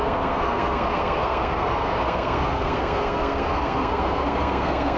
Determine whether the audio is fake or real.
fake